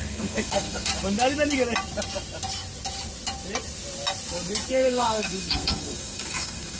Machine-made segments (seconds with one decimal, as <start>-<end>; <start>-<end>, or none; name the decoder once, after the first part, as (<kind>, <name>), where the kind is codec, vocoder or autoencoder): 0.0-0.9 (codec, SNAC); 4.7-6.8